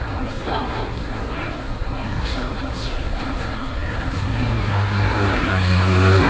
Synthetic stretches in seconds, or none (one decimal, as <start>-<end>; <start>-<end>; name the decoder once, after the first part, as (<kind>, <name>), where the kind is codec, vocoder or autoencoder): 0.0-6.3 (codec, SNAC)